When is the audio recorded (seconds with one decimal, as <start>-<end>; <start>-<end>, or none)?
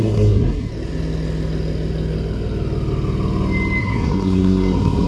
0.7-3.8